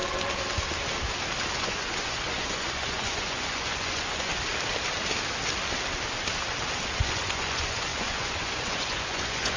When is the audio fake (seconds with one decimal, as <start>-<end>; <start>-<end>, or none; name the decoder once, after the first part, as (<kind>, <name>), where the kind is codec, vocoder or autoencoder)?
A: 1.5-4.3 (vocoder, Vocos); 7.0-9.6